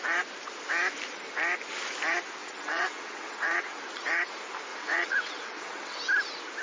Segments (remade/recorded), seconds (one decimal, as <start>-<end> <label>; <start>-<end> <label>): 0.0-2.4 recorded; 2.4-3.8 remade; 3.8-4.7 recorded; 4.7-6.0 remade; 6.0-6.6 recorded